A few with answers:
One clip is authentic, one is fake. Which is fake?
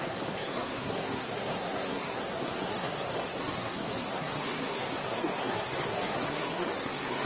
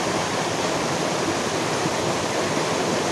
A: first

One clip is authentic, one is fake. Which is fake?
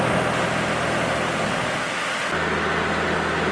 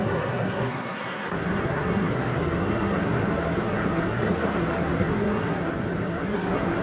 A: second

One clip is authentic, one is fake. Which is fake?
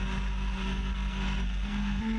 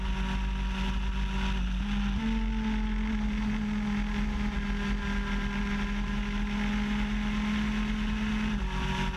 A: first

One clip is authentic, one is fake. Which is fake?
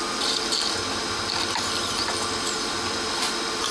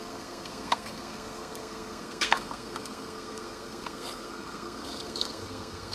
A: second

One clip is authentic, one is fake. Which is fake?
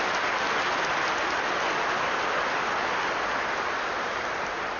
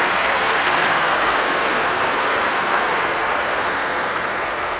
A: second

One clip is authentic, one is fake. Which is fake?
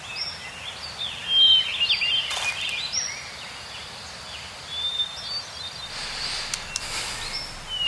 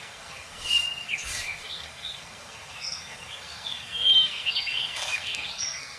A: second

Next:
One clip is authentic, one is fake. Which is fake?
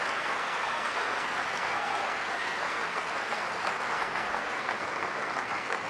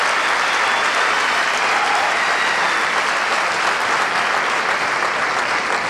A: first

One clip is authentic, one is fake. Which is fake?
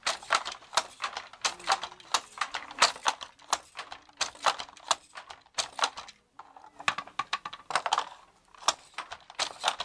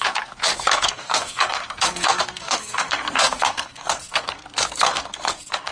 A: second